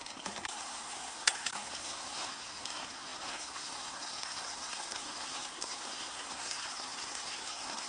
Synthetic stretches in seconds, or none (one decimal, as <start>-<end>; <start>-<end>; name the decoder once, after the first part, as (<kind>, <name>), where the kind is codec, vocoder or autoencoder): 0.0-7.9 (codec, SNAC)